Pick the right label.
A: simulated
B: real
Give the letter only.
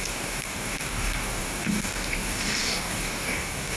A